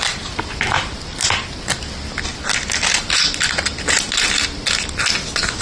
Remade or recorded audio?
recorded